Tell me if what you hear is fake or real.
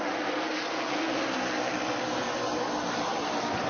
real